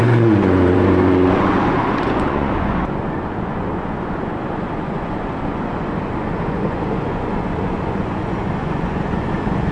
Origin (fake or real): fake